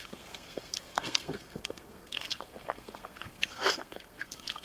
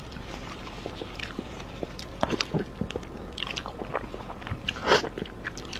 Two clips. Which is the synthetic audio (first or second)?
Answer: first